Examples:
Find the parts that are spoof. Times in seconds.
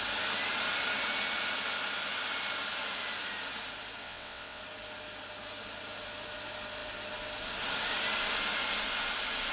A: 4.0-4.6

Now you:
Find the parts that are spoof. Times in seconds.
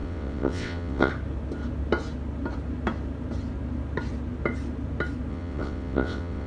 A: 0.0-1.1; 5.3-6.5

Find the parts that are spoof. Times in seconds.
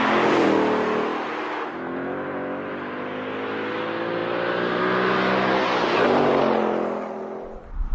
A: none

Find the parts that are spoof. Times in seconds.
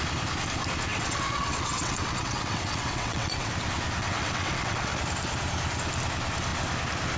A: 0.9-3.5; 4.0-5.0